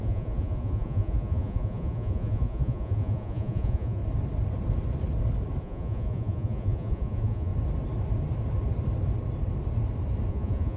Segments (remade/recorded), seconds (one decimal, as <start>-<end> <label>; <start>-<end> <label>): 0.0-4.0 remade; 4.0-5.6 recorded; 5.6-7.5 remade; 7.5-10.3 recorded; 10.3-10.8 remade